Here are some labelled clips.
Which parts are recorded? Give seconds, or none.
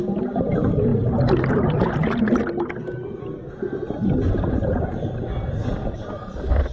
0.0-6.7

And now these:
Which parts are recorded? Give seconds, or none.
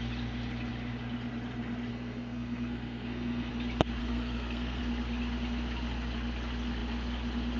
0.0-1.9; 3.5-4.0; 4.8-7.6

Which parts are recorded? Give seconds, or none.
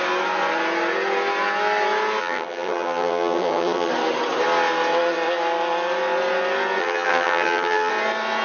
0.0-2.2; 3.9-6.8; 7.9-8.4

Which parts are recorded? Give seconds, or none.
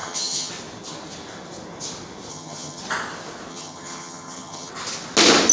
0.5-2.3; 2.8-3.5; 4.7-5.5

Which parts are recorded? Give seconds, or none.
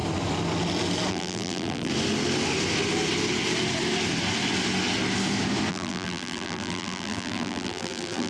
0.0-1.1; 1.9-5.7